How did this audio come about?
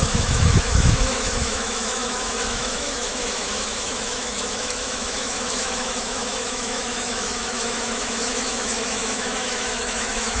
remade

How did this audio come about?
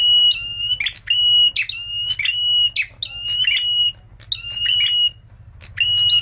recorded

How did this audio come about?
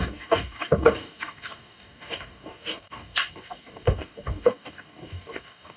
remade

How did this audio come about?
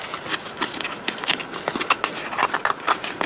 recorded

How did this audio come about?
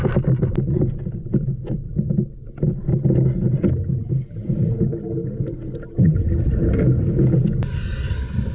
recorded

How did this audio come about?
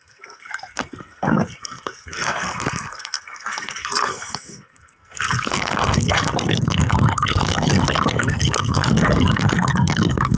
remade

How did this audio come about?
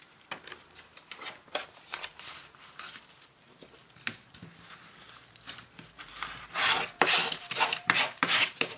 remade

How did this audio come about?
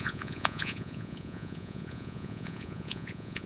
remade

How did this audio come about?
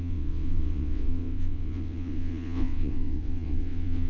remade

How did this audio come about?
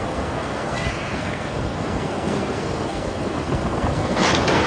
remade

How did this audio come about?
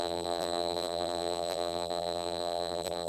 remade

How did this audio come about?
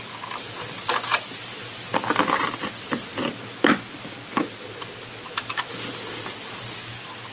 recorded